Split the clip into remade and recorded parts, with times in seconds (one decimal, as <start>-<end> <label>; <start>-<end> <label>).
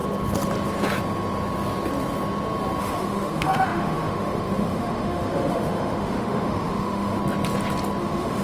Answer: 0.0-2.8 recorded; 2.8-7.2 remade; 7.2-8.0 recorded; 8.0-8.4 remade